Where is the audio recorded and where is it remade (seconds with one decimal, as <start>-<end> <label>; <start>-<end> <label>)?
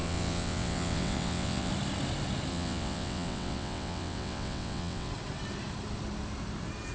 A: 0.0-1.7 remade; 1.7-2.5 recorded; 2.5-5.1 remade; 5.1-6.9 recorded